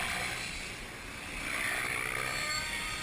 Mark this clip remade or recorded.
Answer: recorded